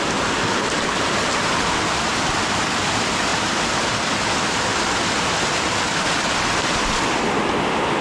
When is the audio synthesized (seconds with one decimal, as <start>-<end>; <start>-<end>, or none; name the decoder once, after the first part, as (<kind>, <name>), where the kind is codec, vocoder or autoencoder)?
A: 3.3-3.8 (vocoder, BigVGAN v2); 4.7-5.3